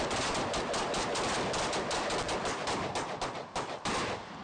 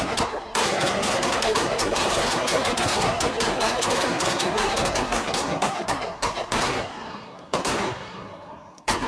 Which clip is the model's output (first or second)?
second